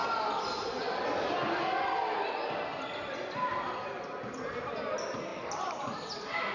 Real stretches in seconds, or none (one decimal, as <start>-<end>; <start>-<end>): 0.0-5.3; 6.0-6.5